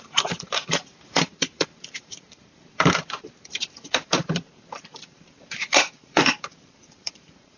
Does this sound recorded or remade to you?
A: remade